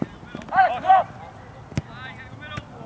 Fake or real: real